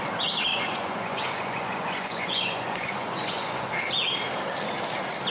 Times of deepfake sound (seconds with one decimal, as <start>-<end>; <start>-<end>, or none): 0.5-3.7